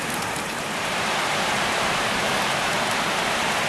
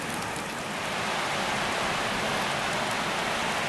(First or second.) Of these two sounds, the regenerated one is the first